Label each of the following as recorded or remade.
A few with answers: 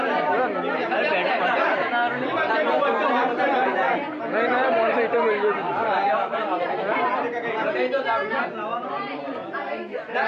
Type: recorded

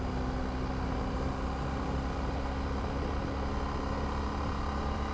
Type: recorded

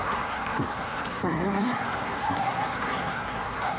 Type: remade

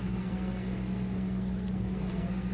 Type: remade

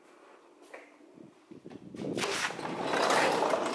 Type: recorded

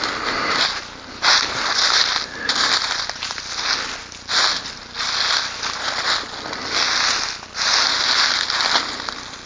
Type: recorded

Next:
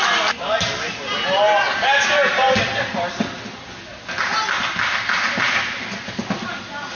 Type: recorded